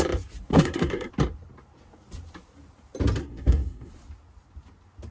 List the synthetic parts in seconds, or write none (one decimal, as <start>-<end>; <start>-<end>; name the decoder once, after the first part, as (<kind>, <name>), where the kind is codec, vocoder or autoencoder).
0.5-1.1 (codec, SNAC); 3.2-3.9